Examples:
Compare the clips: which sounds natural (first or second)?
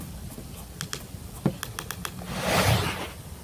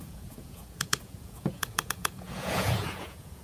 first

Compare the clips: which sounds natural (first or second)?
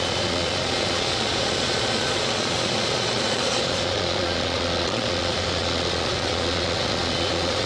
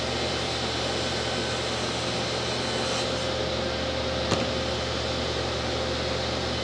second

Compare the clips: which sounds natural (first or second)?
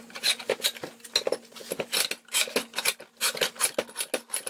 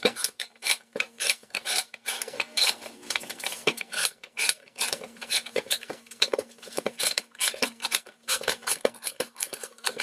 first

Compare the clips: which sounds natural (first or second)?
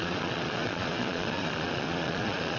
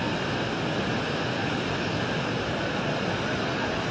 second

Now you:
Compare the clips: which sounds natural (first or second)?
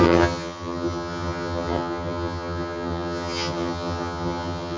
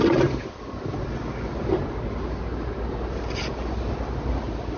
second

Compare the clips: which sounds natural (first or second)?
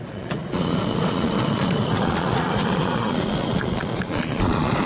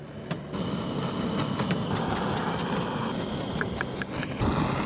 second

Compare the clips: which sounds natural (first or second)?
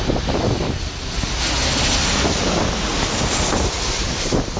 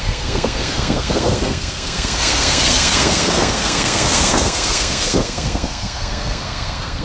first